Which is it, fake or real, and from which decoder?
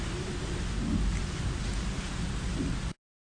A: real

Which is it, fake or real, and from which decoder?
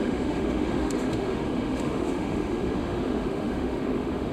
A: fake, autoencoder, DAC-VAE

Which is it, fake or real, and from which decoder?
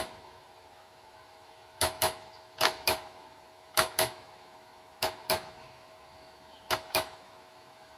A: fake, autoencoder, DAC-VAE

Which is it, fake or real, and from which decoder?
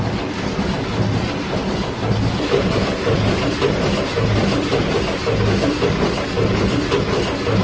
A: real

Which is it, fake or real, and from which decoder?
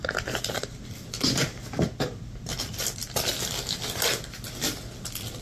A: real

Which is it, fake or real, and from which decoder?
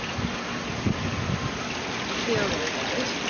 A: real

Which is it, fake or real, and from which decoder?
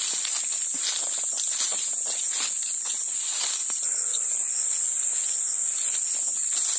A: real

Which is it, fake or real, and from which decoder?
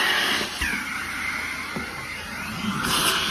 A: real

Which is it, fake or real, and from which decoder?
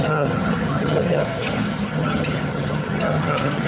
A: fake, vocoder, HiFi-GAN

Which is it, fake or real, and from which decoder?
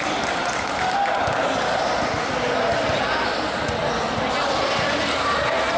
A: real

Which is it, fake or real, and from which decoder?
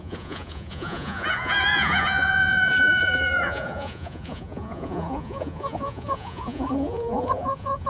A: fake, vocoder, Vocos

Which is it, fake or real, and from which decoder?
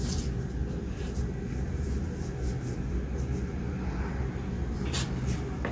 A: real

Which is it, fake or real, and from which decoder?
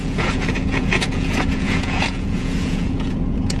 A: fake, vocoder, Vocos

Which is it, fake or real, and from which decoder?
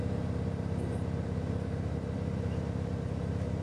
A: fake, vocoder, BigVGAN v2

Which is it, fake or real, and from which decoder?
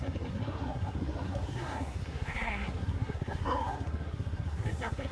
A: fake, codec, SNAC